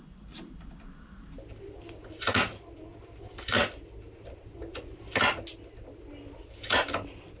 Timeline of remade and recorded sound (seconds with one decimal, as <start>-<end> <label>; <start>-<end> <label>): 0.0-7.4 recorded